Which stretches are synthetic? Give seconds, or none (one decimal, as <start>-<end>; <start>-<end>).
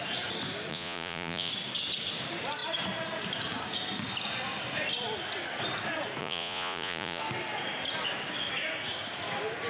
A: 0.7-1.5; 6.2-7.2